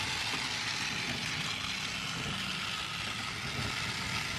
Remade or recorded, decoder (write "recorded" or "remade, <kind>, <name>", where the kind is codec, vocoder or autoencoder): recorded